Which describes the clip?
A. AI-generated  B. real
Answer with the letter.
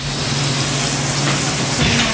B